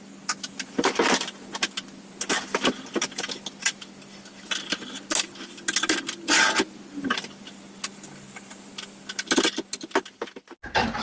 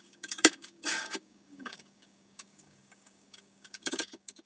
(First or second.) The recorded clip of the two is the first